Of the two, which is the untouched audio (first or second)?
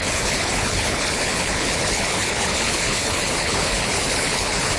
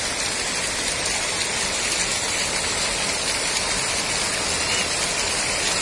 second